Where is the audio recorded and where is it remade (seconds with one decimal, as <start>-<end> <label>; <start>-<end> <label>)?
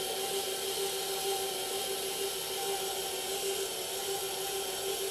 0.0-5.1 recorded